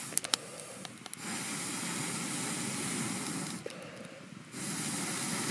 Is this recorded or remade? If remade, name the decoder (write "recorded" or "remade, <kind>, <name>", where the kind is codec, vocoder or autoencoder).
recorded